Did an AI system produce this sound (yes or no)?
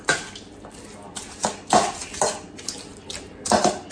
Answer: no